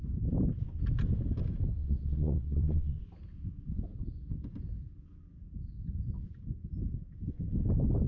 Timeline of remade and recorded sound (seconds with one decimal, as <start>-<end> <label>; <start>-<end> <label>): 0.0-1.8 recorded; 1.8-3.0 remade; 3.0-8.1 recorded